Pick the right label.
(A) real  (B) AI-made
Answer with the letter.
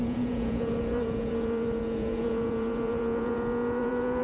B